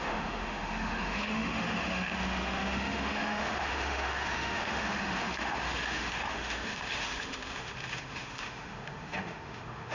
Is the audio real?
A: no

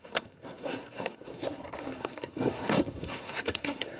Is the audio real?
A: no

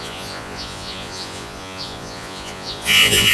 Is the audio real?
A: no